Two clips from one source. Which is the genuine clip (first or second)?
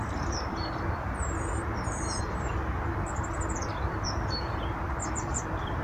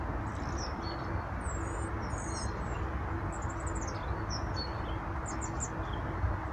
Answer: second